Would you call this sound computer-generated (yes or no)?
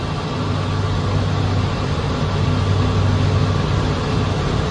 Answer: no